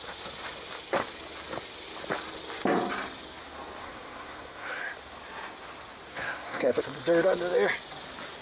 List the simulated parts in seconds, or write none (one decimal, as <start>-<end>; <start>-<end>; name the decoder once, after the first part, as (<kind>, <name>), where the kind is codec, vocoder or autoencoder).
3.8-4.8 (codec, SNAC); 6.1-6.8